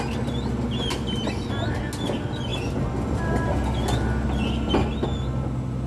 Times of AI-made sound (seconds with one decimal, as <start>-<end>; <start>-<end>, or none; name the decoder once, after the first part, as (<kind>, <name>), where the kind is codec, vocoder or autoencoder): none